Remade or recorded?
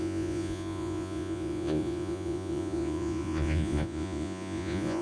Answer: remade